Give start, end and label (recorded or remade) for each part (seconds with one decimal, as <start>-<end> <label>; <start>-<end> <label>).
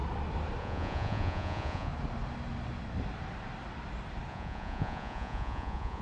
0.0-0.6 recorded; 0.6-1.9 remade; 1.9-4.3 recorded; 4.3-6.0 remade